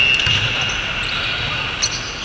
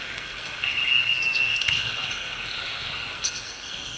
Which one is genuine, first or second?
first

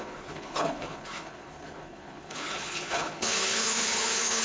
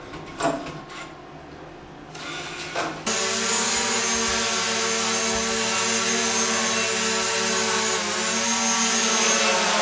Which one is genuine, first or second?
second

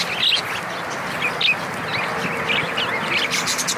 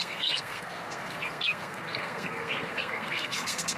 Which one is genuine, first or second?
first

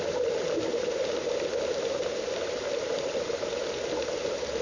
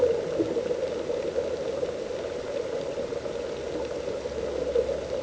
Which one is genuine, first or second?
second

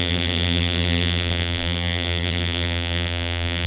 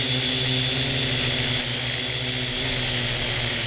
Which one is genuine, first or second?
second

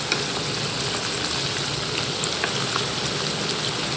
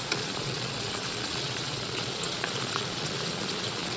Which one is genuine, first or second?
first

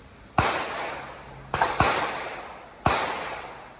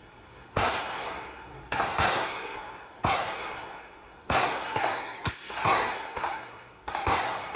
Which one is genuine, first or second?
first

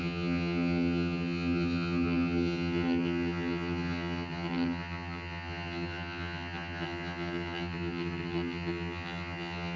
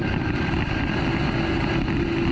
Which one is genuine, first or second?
second